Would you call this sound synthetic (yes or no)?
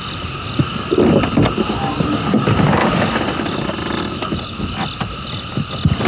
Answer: no